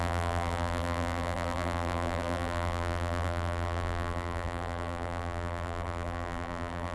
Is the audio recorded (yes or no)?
no